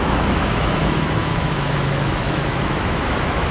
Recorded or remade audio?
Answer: remade